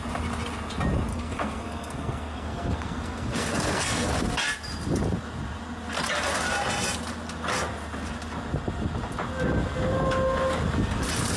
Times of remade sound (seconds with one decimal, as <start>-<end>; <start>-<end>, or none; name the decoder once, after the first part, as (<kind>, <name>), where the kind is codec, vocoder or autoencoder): 1.1-4.1 (codec, SNAC)